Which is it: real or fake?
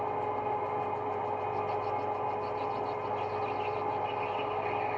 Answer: real